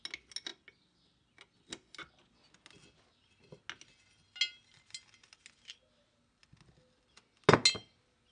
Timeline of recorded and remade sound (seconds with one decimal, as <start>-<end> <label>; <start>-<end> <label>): 0.0-8.3 recorded